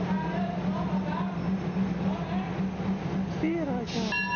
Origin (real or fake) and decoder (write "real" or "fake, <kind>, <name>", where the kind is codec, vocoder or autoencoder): real